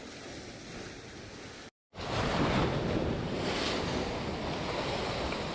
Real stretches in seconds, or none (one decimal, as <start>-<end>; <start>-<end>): 0.0-2.3; 3.5-5.5